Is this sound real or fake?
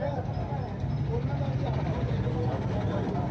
real